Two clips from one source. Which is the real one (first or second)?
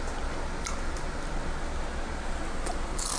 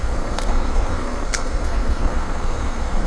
first